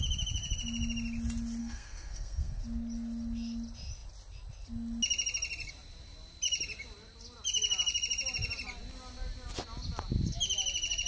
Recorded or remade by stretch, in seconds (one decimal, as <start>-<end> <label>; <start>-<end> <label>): 0.0-1.6 recorded; 1.6-2.6 remade; 2.6-11.1 recorded